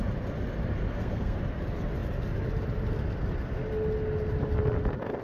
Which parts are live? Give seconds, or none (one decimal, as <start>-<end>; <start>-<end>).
0.0-0.9; 1.4-5.2